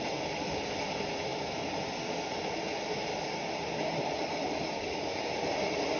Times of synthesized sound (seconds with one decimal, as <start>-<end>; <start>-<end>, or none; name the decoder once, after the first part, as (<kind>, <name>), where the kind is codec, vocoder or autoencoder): none